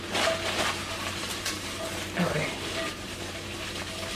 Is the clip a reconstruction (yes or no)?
no